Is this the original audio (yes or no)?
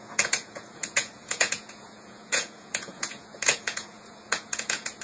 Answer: no